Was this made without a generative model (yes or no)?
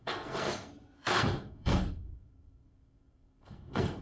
no